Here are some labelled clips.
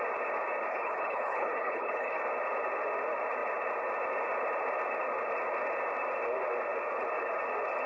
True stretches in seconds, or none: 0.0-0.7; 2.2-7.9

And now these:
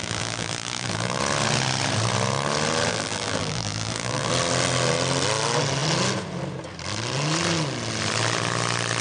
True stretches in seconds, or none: 1.2-2.9; 4.3-9.0